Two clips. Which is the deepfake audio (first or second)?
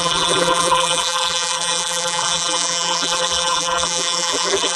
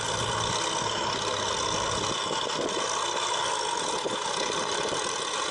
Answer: first